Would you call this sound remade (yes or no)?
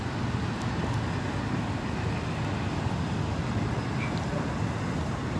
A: no